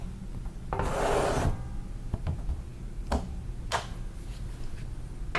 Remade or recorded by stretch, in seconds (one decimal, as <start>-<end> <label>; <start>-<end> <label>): 0.0-5.4 recorded